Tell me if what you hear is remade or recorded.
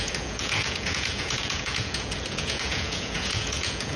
remade